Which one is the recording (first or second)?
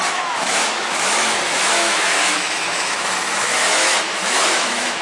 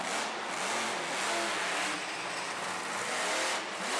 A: second